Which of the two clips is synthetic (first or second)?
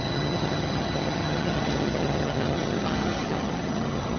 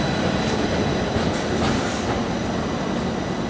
first